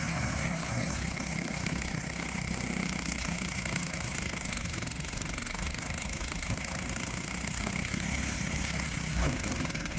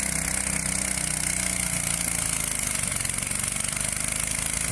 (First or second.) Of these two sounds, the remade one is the first